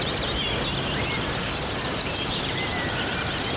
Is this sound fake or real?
real